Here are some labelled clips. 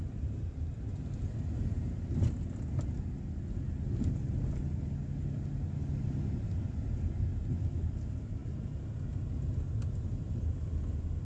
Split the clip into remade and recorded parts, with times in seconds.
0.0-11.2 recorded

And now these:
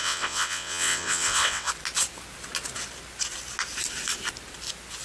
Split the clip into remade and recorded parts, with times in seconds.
0.0-1.7 remade; 1.7-5.0 recorded

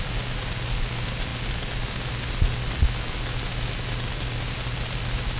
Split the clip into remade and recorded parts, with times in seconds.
0.0-5.4 recorded

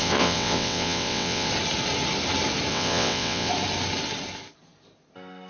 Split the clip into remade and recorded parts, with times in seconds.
0.0-1.5 remade; 1.5-2.7 recorded; 2.7-3.5 remade; 3.5-5.5 recorded